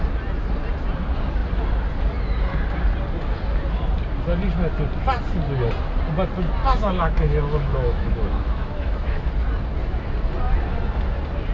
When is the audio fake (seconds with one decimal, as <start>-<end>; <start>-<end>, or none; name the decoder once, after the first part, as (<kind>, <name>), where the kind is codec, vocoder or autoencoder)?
6.6-9.3 (autoencoder, DAC-VAE)